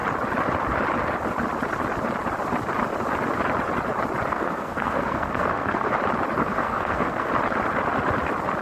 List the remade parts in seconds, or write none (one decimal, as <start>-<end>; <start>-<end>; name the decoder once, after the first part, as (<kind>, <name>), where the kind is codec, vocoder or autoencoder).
4.3-5.9 (codec, SNAC); 6.4-7.3